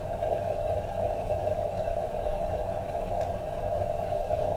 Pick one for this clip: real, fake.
fake